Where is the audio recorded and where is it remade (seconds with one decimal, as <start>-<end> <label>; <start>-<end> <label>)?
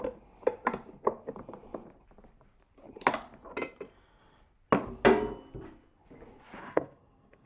0.0-6.6 recorded; 6.6-7.5 remade